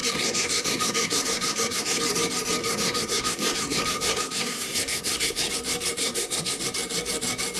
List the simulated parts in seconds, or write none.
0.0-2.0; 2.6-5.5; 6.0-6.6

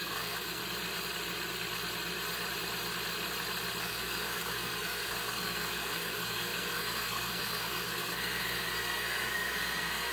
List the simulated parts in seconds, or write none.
0.0-0.6; 3.8-10.1

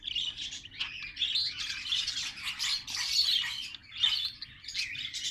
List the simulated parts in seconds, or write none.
none

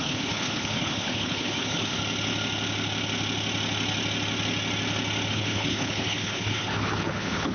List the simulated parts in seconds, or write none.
0.0-2.0; 5.3-7.5

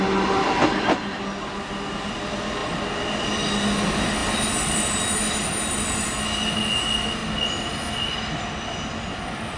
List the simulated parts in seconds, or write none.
none

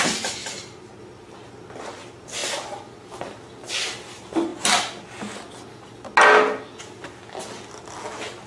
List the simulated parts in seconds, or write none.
0.4-1.0

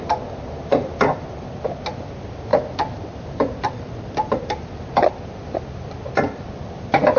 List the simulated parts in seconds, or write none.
2.5-4.6

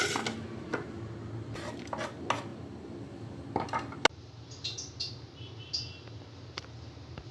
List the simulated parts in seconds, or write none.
none